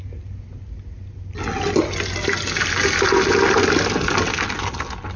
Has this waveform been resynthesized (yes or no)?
no